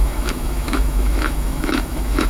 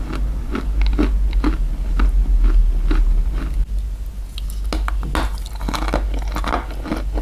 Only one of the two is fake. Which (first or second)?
first